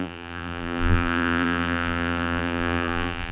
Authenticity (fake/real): fake